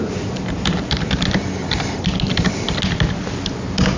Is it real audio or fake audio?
real